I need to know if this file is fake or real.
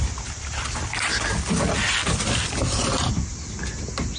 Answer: real